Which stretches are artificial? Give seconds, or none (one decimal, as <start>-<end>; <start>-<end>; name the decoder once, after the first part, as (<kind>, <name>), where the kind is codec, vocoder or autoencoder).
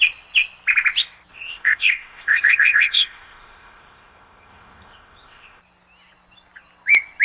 1.3-5.6 (codec, ZipCodec)